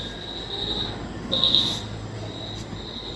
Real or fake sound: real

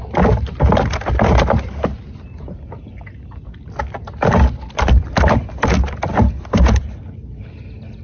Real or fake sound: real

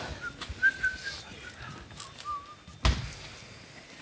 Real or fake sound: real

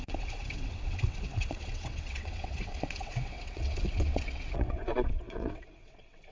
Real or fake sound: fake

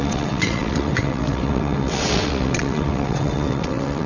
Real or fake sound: fake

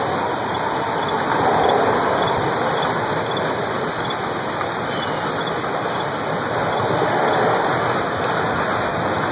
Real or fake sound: real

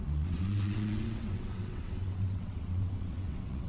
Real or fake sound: fake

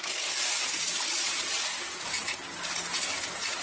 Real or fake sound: real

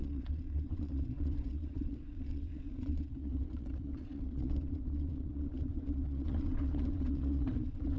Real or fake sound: fake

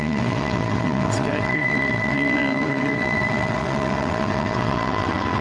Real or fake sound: fake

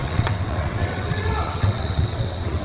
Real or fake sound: fake